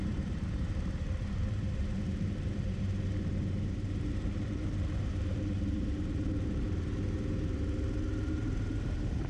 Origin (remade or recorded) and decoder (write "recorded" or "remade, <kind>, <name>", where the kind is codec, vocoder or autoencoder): remade, vocoder, BigVGAN v2